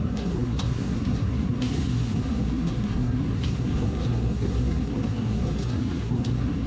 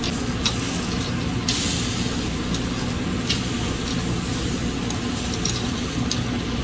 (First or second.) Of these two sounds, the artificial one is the first